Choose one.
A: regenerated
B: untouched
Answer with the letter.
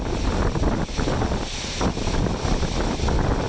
B